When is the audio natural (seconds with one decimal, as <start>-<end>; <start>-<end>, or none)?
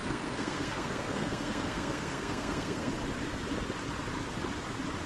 2.9-5.1